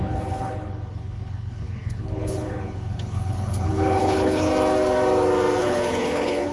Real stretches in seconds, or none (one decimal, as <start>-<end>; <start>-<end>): 4.5-5.6